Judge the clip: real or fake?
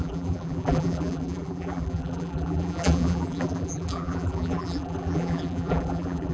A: fake